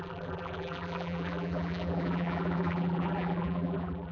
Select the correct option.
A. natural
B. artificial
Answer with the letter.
B